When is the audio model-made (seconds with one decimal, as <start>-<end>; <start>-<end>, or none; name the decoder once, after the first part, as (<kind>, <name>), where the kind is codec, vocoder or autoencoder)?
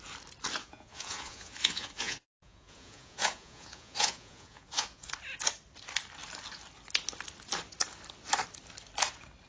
0.6-5.1 (vocoder, Vocos)